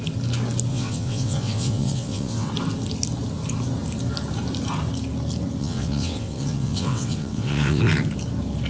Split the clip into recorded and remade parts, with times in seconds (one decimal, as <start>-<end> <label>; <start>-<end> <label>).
0.0-0.7 recorded; 0.7-2.5 remade; 2.5-5.6 recorded; 5.6-7.8 remade; 7.8-8.7 recorded